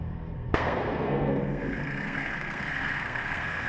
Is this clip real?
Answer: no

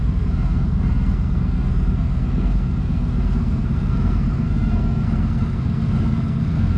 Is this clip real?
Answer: no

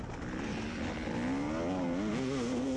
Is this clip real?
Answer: yes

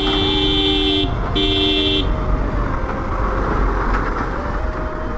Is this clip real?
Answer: yes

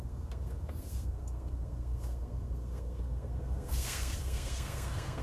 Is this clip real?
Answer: no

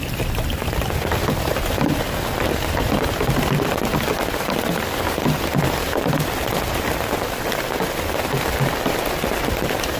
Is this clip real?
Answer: yes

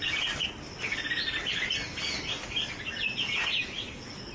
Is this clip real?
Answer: yes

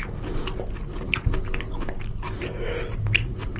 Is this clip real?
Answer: yes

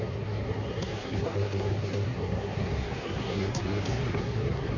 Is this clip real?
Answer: no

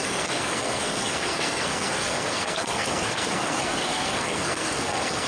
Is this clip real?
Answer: no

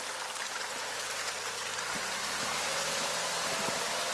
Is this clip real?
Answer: yes